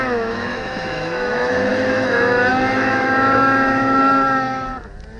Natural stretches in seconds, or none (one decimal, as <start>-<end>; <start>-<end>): 4.7-5.2